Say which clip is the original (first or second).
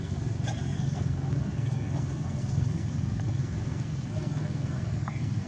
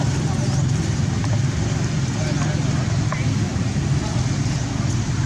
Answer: second